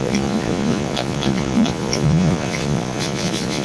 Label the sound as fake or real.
fake